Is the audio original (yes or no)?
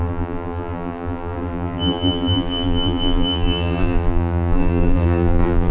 no